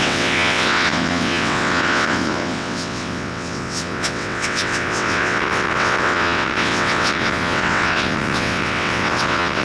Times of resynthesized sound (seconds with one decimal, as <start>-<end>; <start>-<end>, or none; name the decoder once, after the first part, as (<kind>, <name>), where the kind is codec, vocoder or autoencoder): 0.0-9.6 (vocoder, WaveNeXt)